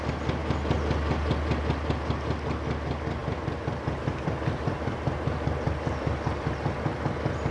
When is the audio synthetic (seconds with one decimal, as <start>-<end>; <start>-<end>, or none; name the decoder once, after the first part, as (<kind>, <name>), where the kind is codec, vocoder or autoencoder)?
3.2-6.5 (vocoder, BigVGAN v2)